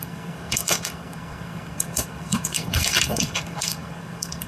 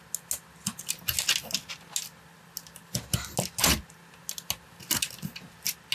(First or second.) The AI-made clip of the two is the first